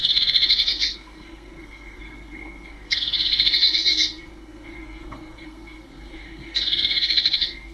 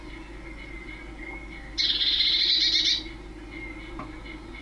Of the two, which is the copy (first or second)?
first